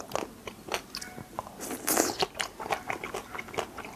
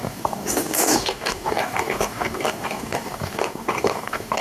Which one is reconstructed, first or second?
second